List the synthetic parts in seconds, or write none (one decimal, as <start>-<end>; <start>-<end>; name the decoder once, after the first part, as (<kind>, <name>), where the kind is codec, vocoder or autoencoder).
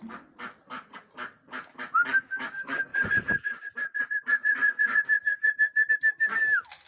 2.9-5.9 (vocoder, Vocos)